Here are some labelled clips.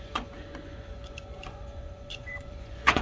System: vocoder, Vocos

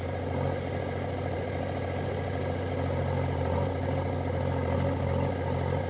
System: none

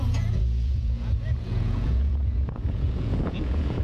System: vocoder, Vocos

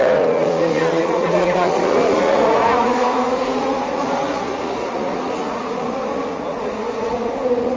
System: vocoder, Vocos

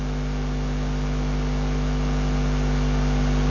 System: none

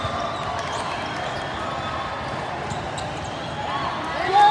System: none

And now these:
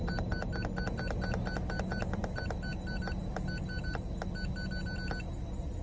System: none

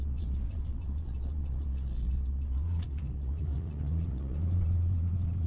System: vocoder, Vocos